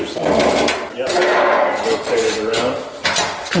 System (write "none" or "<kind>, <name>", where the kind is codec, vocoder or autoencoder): none